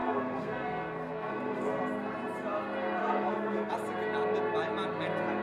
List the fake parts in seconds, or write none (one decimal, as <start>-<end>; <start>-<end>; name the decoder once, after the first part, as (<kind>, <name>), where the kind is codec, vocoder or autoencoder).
0.0-1.8 (codec, SNAC); 3.0-3.7

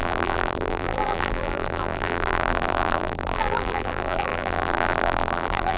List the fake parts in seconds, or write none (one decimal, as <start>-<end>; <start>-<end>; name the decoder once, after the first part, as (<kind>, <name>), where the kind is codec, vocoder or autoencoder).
0.0-5.8 (vocoder, BigVGAN v2)

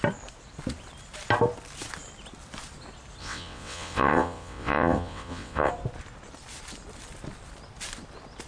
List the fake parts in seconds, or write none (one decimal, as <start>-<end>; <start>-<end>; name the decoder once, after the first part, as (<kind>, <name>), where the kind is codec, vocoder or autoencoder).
3.2-5.7 (vocoder, WaveNeXt)

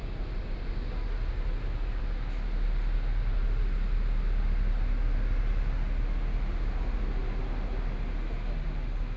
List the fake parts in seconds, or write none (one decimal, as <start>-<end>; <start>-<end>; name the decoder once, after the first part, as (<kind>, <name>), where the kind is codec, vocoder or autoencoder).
none

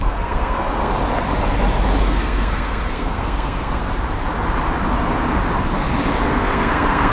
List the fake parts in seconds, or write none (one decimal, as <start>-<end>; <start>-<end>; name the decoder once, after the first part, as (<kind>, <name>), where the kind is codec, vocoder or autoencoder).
0.0-0.9 (codec, SNAC); 2.0-3.8; 6.3-7.1

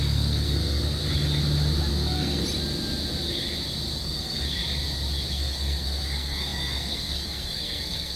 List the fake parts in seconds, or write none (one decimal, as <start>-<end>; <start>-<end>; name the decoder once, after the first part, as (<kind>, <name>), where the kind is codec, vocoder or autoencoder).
0.0-1.0 (codec, SNAC); 1.9-2.4; 4.0-4.6; 5.3-8.2

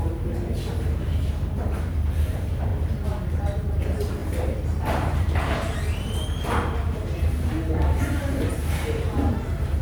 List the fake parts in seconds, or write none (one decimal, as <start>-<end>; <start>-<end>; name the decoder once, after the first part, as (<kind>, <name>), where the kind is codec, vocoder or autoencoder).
0.0-2.7 (vocoder, BigVGAN v2); 3.4-8.6; 9.3-9.8